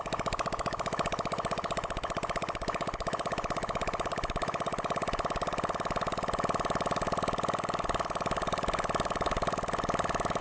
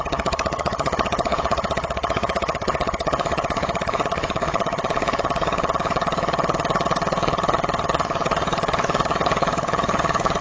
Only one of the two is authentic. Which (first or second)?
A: first